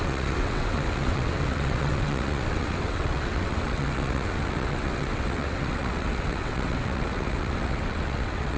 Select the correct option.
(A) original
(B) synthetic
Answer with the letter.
B